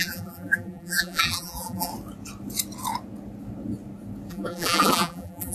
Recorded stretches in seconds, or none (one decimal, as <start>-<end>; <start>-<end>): 1.9-4.3